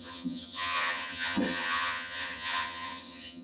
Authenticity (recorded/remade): remade